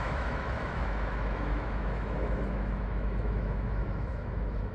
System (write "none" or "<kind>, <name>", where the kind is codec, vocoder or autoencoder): autoencoder, DAC-VAE